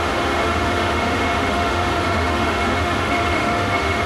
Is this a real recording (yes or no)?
no